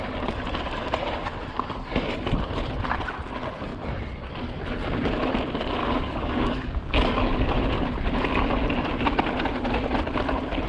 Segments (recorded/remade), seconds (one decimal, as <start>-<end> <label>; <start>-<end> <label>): 0.0-5.8 recorded; 5.8-7.7 remade; 7.7-10.7 recorded